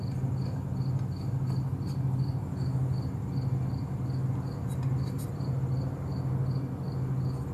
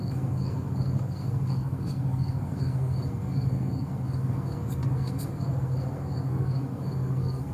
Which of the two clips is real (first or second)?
first